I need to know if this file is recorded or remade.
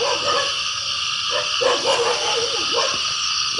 recorded